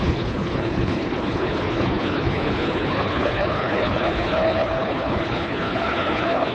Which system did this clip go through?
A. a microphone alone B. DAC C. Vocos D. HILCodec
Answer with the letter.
D